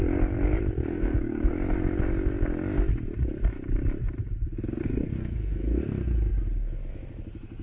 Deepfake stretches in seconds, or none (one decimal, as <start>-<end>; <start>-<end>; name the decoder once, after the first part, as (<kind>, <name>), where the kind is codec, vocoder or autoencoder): 0.9-1.5 (codec, SNAC); 4.8-5.8